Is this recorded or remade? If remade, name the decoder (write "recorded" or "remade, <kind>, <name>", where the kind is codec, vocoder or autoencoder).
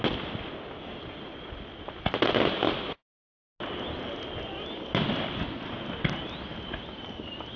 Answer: recorded